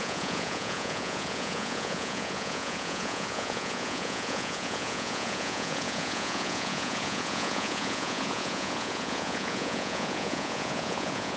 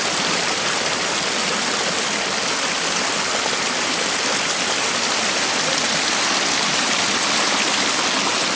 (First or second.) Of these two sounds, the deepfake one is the first